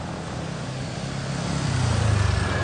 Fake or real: real